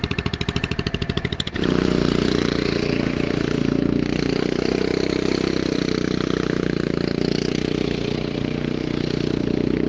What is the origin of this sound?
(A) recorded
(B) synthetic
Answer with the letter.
B